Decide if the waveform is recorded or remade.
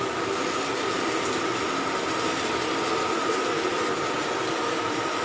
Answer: recorded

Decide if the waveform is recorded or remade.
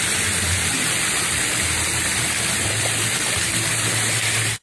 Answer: recorded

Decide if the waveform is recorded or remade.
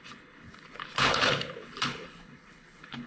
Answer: remade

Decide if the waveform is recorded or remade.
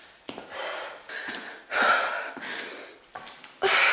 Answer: recorded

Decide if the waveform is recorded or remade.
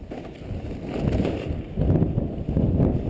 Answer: recorded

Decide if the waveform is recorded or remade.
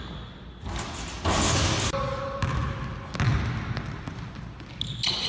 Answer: recorded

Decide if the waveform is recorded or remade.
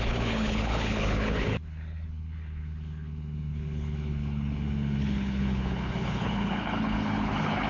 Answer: remade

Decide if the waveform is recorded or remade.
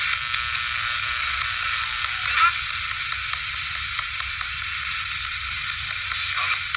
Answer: recorded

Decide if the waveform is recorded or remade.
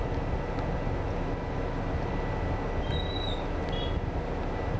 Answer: recorded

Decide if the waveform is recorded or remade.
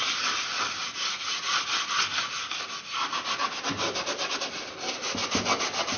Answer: recorded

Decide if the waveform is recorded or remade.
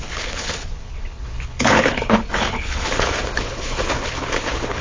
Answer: remade